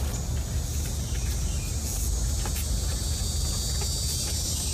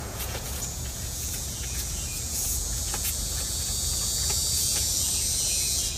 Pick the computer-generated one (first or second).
second